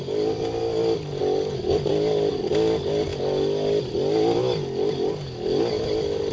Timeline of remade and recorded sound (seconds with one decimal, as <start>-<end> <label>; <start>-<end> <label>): 0.0-6.3 recorded